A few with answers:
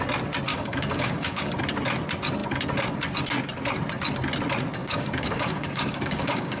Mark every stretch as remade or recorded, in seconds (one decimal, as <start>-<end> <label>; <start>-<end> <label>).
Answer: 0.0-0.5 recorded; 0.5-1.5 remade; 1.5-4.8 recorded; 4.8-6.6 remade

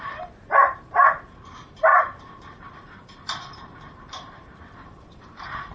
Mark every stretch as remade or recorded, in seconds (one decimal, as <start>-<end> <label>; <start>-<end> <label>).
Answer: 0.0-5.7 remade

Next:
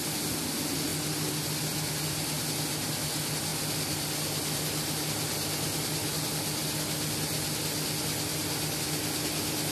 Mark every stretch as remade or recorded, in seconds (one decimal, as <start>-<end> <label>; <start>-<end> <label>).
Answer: 0.0-9.7 recorded

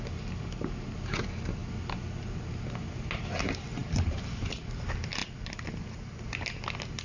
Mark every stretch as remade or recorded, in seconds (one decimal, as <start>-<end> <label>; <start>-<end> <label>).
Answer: 0.0-7.0 recorded

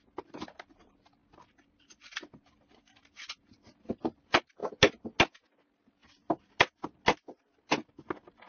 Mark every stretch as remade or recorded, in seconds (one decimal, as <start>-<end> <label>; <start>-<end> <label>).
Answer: 0.0-1.2 recorded; 1.2-2.9 remade; 2.9-8.5 recorded

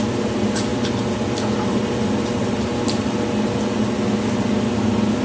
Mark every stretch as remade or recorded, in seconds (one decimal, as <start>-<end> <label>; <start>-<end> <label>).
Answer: 0.0-5.2 recorded

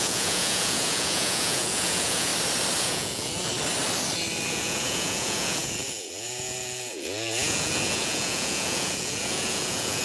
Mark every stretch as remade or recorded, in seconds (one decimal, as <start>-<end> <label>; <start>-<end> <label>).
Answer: 0.0-2.3 remade; 2.3-2.8 recorded; 2.8-3.5 remade; 3.5-4.5 recorded; 4.5-10.0 remade

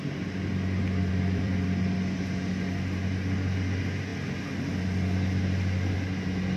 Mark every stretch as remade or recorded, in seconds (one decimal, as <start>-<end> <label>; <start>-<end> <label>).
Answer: 0.0-1.1 recorded; 1.1-2.2 remade; 2.2-6.6 recorded